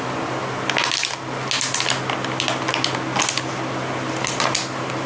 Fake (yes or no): no